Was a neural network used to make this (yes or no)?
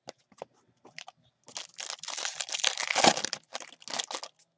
no